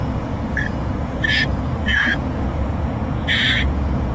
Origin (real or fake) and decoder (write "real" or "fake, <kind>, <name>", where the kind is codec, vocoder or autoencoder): fake, vocoder, Vocos